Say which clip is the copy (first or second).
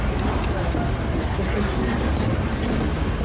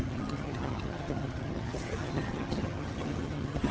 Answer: second